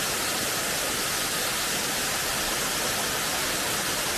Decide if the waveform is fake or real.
real